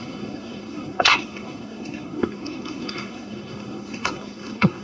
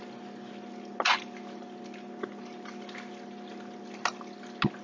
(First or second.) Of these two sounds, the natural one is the second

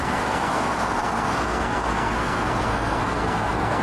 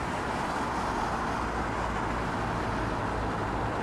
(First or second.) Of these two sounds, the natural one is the second